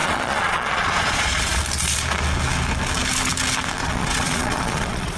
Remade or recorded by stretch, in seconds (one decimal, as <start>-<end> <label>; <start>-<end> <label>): 0.0-1.6 remade; 1.6-3.8 recorded; 3.8-5.2 remade